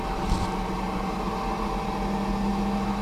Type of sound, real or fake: real